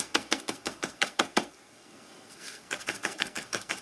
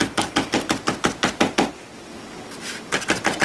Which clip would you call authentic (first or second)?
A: second